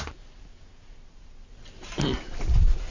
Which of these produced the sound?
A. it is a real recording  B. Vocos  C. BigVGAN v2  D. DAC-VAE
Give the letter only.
A